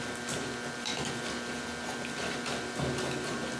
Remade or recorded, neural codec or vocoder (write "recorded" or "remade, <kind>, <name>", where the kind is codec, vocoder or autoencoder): recorded